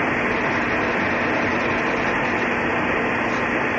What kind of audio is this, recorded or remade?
recorded